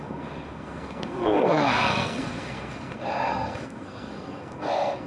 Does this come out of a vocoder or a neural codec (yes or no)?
yes